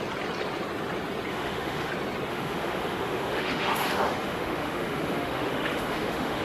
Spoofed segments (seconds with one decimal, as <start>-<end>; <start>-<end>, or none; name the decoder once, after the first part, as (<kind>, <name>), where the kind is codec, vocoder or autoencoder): 1.3-1.9 (autoencoder, DAC-VAE); 2.3-6.4